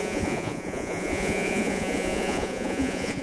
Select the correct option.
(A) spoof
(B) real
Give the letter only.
A